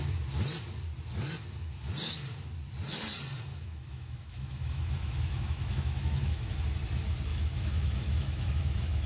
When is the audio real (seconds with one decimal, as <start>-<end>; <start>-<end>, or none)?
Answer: 0.0-3.5; 6.6-7.3